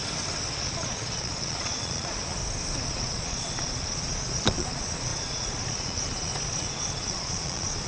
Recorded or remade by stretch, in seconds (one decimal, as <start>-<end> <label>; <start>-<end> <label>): 0.0-0.5 recorded; 0.5-2.4 remade; 2.4-2.9 recorded; 2.9-7.9 remade